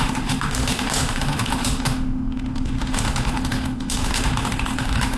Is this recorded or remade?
remade